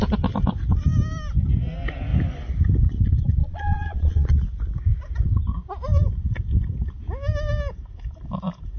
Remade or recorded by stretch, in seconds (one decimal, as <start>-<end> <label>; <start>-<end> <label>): 0.0-3.4 recorded; 3.4-4.3 remade; 4.3-8.8 recorded